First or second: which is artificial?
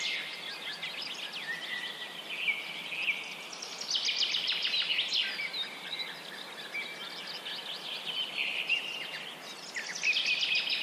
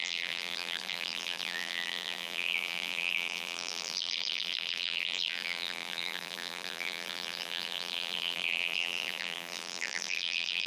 second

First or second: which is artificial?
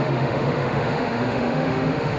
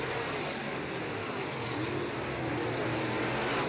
first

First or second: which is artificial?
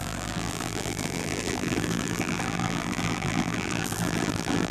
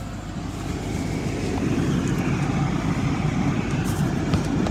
first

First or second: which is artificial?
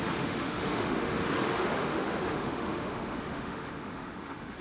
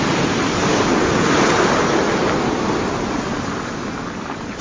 first